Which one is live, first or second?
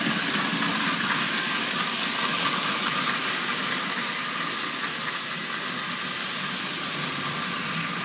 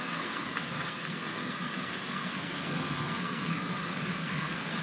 first